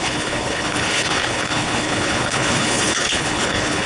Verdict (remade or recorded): remade